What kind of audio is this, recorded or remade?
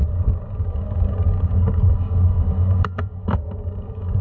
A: remade